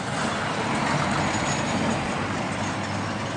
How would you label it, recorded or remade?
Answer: recorded